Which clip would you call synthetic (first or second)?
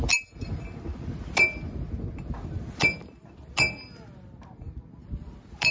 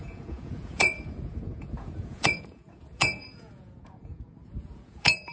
second